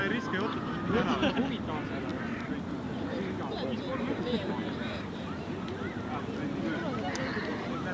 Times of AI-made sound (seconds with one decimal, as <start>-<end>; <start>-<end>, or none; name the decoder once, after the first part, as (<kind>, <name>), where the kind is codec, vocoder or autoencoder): 3.9-6.2 (vocoder, BigVGAN v2)